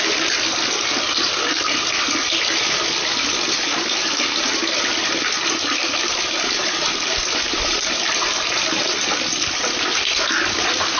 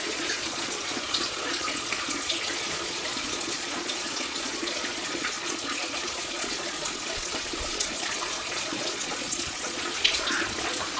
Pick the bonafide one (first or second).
first